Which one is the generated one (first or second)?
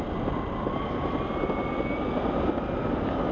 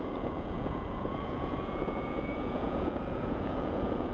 second